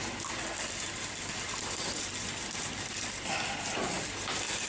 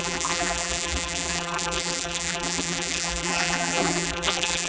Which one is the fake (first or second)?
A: second